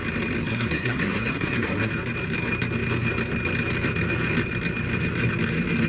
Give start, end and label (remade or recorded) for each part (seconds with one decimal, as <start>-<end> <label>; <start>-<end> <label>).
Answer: 0.0-0.4 recorded; 0.4-1.9 remade; 1.9-5.9 recorded